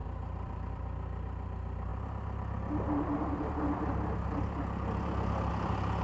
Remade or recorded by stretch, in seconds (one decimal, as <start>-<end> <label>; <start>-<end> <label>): 0.0-1.9 remade; 1.9-5.5 recorded; 5.5-6.0 remade